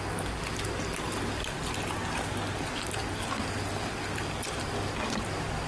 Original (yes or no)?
yes